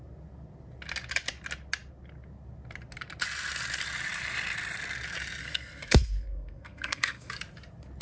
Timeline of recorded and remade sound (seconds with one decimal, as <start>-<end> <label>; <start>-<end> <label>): 0.0-5.4 recorded; 5.4-7.3 remade; 7.3-8.0 recorded